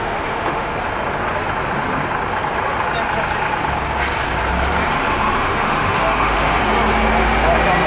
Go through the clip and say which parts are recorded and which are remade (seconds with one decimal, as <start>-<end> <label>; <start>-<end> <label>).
0.0-0.7 remade; 0.7-5.4 recorded; 5.4-6.6 remade; 6.6-7.9 recorded